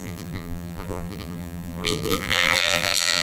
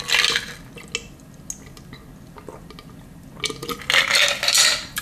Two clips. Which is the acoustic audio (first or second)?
second